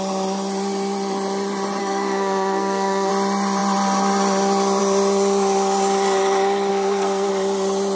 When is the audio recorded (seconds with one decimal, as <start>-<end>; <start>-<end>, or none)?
0.0-1.8; 3.1-6.7; 7.3-7.9